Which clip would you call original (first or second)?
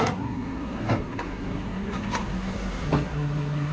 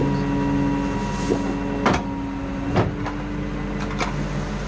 second